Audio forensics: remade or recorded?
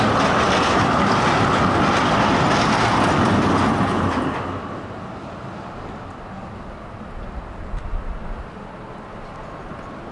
recorded